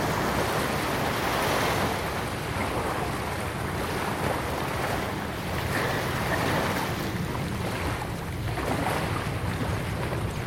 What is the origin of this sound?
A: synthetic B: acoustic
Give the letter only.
B